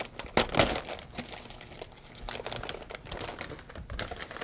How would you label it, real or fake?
real